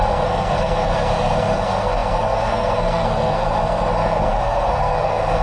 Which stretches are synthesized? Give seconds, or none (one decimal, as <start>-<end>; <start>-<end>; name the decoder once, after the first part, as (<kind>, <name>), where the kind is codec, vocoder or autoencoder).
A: 0.0-5.4 (codec, SNAC)